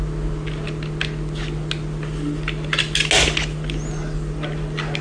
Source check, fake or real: real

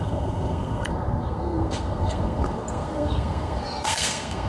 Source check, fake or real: fake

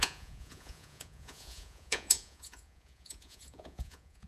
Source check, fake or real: fake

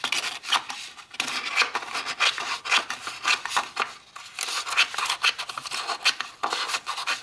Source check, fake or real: real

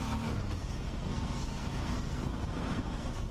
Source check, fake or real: fake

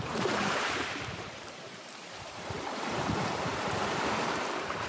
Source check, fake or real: fake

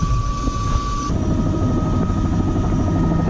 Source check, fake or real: real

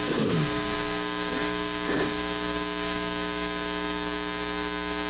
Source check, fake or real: fake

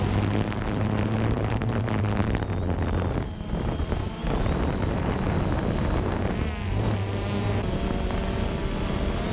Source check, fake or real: real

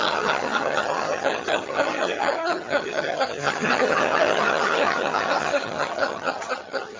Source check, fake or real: fake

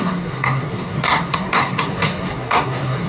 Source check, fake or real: fake